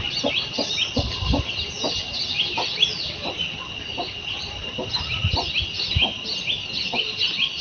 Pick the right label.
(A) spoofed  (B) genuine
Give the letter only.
B